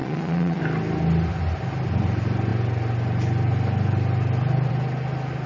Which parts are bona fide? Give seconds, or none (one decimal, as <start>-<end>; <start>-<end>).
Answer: 0.6-5.5